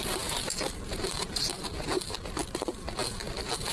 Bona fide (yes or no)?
yes